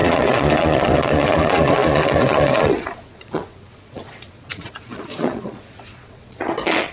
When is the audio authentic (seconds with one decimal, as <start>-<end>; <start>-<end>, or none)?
none